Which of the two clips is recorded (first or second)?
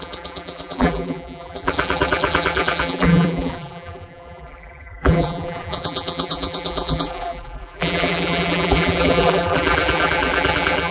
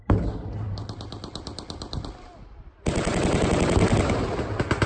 second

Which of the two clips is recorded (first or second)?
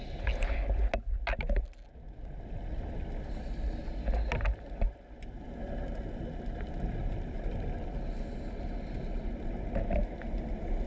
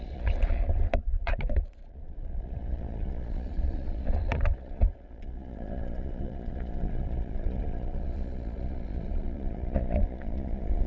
first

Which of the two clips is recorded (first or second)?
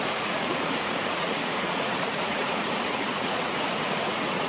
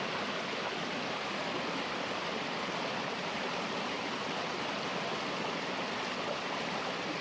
second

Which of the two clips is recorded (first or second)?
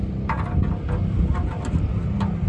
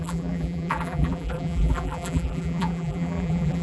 first